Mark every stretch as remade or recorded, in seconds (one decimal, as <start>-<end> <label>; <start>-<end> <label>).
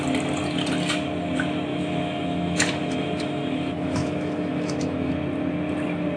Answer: 0.0-1.7 recorded; 1.7-5.1 remade; 5.1-6.2 recorded